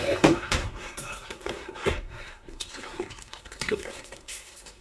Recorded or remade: remade